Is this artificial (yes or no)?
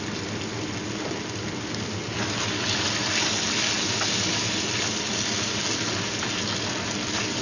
no